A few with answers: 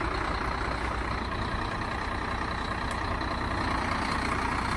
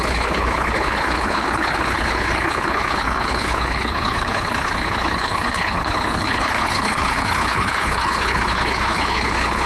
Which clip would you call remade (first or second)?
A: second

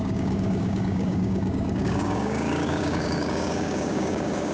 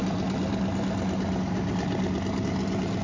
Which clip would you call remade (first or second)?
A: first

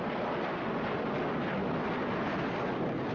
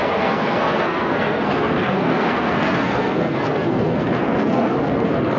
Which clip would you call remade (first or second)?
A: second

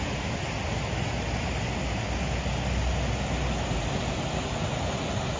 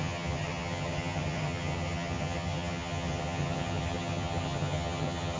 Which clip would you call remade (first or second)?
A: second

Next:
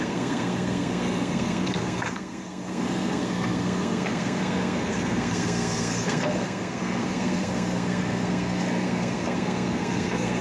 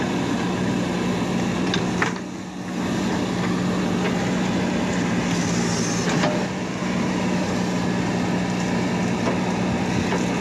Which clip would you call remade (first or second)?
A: first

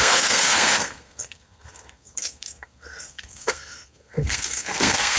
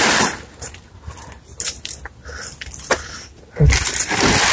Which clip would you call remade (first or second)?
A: first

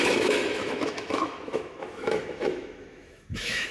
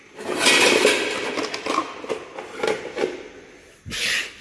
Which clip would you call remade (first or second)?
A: first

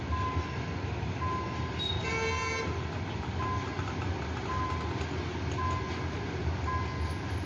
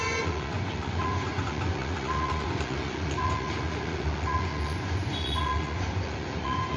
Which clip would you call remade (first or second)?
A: second